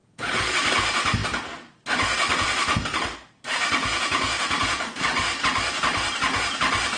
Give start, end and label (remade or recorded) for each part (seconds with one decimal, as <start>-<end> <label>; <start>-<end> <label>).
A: 0.0-0.5 remade; 0.5-3.8 recorded; 3.8-5.0 remade; 5.0-7.0 recorded